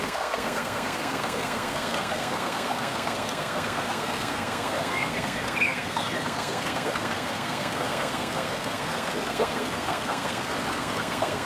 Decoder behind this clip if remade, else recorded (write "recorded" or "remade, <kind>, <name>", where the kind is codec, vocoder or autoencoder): remade, codec, SNAC